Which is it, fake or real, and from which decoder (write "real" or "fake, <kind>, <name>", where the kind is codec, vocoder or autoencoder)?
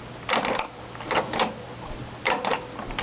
real